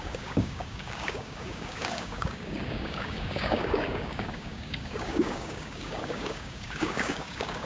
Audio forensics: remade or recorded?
remade